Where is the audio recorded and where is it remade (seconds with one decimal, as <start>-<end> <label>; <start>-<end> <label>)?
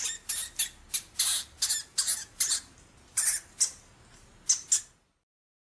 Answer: 0.0-5.8 recorded